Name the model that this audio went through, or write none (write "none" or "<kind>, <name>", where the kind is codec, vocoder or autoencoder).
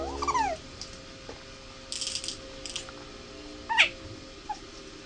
none